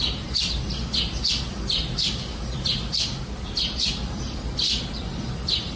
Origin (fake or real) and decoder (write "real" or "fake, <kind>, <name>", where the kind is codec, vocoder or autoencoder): real